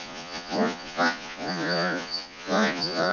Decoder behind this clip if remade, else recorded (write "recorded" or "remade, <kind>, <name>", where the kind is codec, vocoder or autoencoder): remade, vocoder, Vocos